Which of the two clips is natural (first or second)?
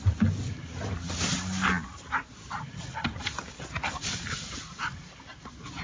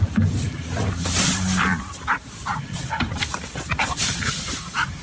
first